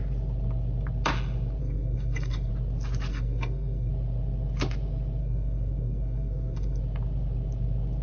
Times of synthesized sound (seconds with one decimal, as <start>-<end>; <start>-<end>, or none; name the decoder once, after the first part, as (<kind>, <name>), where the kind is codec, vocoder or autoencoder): 1.6-2.5 (codec, SNAC); 3.1-3.9; 5.2-6.8

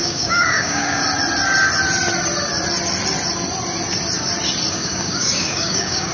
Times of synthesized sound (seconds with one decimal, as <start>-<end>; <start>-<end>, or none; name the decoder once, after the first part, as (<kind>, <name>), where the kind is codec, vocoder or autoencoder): 0.0-1.0 (codec, DAC); 4.7-6.1

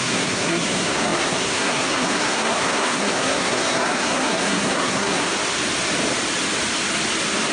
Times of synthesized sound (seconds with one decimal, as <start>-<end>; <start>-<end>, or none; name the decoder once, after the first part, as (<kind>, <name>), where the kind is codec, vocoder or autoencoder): 0.0-5.3 (codec, SNAC)

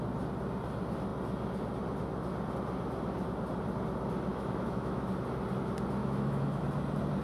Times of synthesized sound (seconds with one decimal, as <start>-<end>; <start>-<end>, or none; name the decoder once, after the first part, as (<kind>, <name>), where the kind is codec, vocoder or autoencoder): 4.3-5.1 (autoencoder, DAC-VAE); 6.0-6.6